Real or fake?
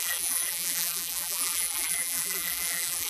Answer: fake